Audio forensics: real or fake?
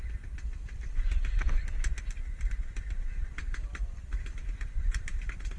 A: fake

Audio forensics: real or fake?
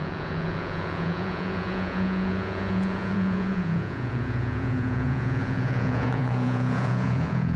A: fake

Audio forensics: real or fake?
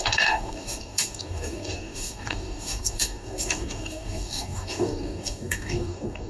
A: fake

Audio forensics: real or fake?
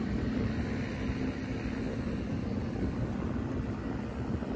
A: real